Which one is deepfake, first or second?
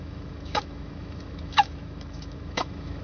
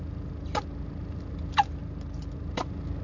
first